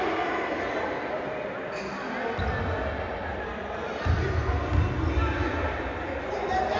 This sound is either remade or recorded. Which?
recorded